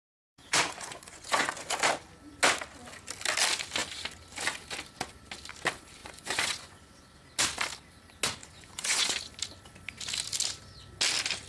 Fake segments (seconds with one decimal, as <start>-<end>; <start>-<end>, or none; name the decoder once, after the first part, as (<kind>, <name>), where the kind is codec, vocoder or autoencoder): 0.0-1.7 (vocoder, Vocos); 6.0-7.3; 8.4-9.2